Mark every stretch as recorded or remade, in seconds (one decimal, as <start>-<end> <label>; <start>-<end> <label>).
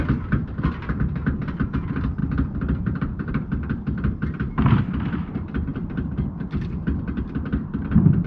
0.0-8.3 recorded